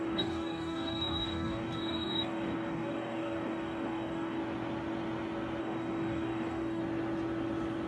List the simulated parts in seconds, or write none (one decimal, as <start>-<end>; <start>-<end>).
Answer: 0.0-4.4; 5.6-6.8